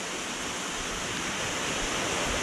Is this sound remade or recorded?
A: recorded